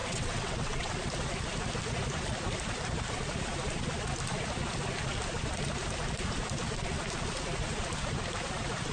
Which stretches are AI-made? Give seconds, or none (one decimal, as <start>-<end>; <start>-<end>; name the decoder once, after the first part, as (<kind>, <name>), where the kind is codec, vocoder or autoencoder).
0.0-0.9 (vocoder, WaveNeXt)